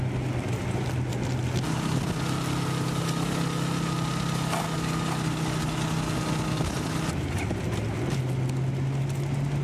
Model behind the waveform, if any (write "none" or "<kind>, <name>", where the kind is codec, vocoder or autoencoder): none